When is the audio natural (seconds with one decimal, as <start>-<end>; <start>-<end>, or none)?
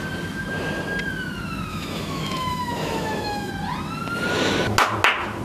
0.0-1.7; 3.5-5.4